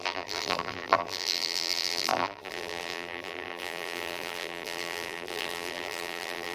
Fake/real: fake